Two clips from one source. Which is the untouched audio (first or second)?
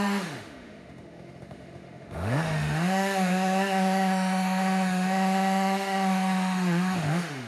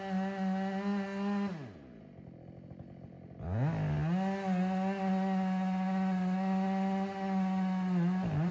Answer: second